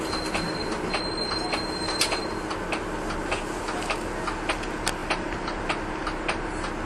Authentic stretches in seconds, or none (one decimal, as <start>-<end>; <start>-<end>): 0.0-5.0; 6.5-6.9